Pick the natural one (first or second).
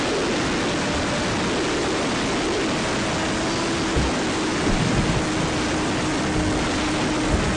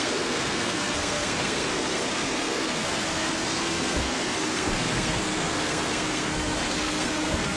first